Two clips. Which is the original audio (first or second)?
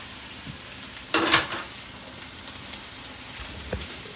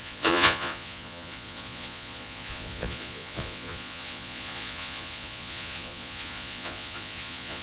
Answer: first